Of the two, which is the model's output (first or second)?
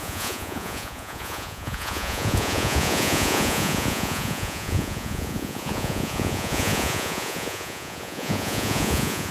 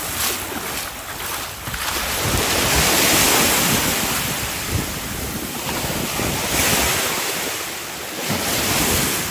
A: first